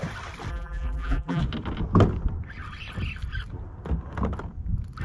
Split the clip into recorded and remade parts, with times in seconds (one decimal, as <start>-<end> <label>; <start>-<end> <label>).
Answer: 0.0-0.5 recorded; 0.5-1.4 remade; 1.4-5.0 recorded